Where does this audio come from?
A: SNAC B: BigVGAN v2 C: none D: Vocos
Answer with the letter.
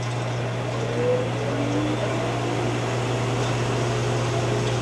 C